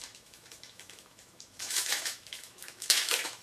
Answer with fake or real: fake